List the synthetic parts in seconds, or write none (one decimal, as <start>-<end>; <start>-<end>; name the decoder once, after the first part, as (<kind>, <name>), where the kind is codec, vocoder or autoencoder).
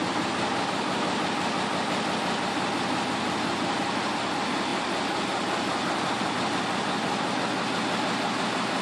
none